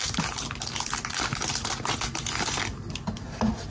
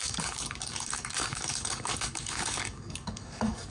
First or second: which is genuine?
first